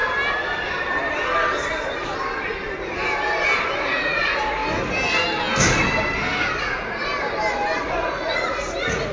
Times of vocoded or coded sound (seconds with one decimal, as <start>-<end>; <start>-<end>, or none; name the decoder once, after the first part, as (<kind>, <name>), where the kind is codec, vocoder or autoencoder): 3.8-4.6 (vocoder, Vocos); 6.6-7.1; 7.8-9.1